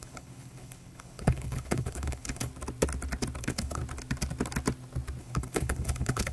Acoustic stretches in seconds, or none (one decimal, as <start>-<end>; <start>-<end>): 2.5-3.4; 3.8-5.2